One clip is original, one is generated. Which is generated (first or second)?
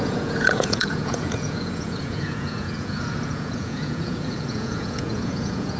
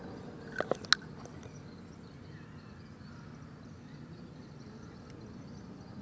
first